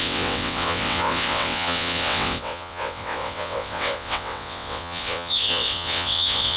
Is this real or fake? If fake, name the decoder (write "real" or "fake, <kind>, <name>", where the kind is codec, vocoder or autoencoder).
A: fake, vocoder, WaveNeXt